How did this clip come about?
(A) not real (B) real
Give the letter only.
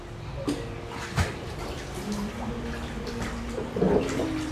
B